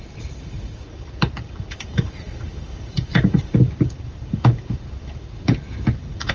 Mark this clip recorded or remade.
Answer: remade